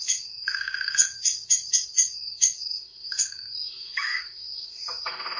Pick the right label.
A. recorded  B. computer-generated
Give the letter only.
B